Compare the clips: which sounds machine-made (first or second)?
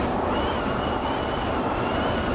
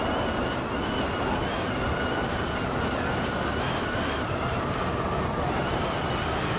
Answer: first